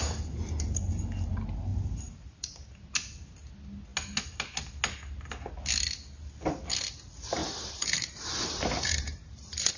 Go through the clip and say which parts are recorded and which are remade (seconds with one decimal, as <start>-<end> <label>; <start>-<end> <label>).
0.0-1.7 recorded; 1.7-2.7 remade; 2.7-7.4 recorded; 7.4-9.8 remade